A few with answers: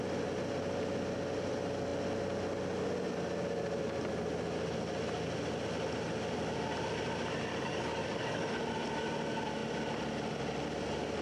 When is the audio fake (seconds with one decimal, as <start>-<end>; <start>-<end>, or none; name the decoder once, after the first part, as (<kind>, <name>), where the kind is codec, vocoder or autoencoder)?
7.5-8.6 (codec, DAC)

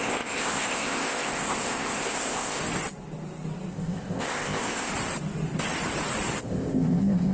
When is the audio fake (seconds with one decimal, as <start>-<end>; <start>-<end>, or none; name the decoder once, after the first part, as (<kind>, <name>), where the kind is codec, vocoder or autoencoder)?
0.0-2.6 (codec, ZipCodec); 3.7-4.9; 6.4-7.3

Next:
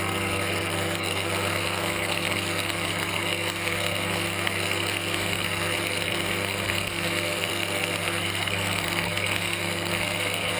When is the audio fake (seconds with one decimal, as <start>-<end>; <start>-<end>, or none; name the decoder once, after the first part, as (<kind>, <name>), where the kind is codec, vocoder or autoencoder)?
0.0-10.6 (codec, SNAC)

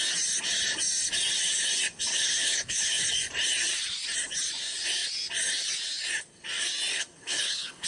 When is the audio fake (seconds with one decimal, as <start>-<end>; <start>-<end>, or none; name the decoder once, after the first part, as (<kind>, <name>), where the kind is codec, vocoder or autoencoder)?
2.1-3.0 (codec, HILCodec); 6.9-7.9